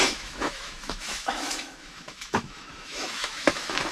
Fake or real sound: fake